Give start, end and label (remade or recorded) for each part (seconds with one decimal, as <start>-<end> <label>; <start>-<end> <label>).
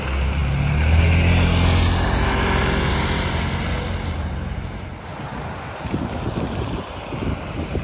0.0-7.8 recorded